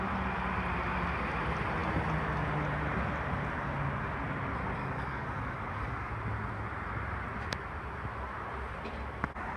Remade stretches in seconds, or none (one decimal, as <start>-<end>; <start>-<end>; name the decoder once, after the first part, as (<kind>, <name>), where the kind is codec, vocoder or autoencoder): 4.8-6.1 (codec, DAC)